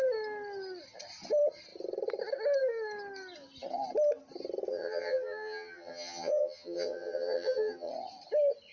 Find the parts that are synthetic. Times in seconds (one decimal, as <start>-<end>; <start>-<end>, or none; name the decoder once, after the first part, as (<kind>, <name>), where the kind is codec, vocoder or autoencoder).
4.7-7.9 (vocoder, HiFi-GAN)